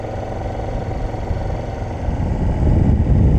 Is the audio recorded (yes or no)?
yes